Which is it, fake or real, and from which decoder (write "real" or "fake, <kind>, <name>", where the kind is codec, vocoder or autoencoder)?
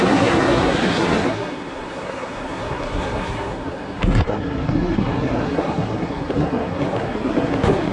fake, codec, SNAC